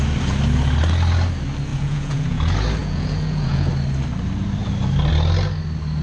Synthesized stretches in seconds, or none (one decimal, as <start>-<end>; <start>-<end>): 1.7-2.4; 2.8-3.7